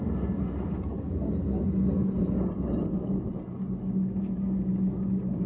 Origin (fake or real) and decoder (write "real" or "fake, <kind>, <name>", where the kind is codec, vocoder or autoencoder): real